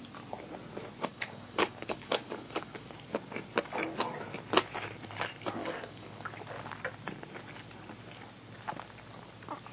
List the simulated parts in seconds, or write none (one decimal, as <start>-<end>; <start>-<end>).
1.1-2.9; 5.6-6.3